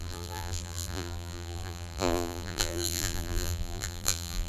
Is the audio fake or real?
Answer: fake